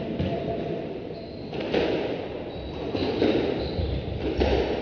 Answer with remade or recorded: recorded